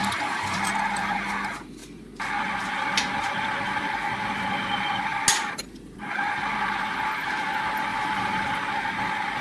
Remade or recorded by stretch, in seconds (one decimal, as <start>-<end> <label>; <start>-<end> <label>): 0.0-0.6 remade; 0.6-7.9 recorded; 7.9-8.4 remade; 8.4-9.4 recorded